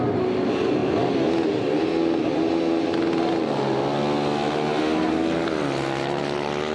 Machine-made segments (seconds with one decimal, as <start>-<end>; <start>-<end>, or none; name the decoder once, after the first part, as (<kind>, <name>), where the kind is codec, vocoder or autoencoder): none